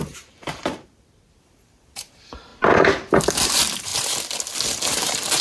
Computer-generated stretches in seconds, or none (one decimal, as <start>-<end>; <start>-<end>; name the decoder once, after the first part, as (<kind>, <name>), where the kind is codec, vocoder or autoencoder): 0.0-2.5 (vocoder, BigVGAN v2); 3.2-3.9; 4.8-5.4